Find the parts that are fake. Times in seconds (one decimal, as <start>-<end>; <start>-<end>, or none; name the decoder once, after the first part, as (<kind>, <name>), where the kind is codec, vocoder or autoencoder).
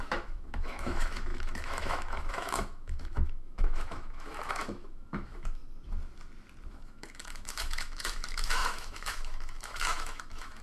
0.0-5.6 (autoencoder, DAC-VAE); 6.7-10.6